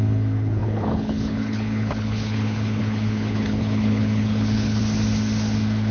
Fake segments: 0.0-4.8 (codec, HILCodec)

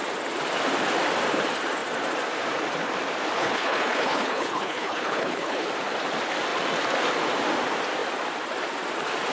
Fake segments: 3.4-5.7 (codec, HILCodec)

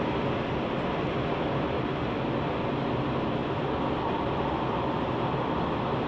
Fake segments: none